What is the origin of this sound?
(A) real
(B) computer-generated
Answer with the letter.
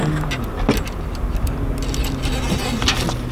A